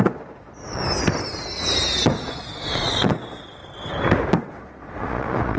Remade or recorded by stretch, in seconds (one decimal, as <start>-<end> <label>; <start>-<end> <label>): 0.0-0.8 remade; 0.8-2.2 recorded; 2.2-3.6 remade; 3.6-4.6 recorded; 4.6-5.6 remade